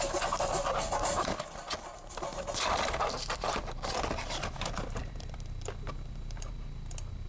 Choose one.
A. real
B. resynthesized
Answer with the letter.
B